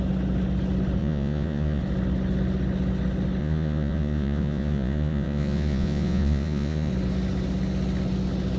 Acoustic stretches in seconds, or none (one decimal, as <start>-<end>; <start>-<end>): 0.0-1.0; 1.8-3.4; 6.9-8.6